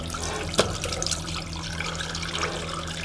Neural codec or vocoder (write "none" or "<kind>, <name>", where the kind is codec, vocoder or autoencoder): none